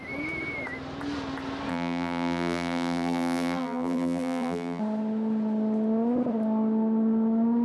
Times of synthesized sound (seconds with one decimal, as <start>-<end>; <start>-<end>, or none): 1.7-4.8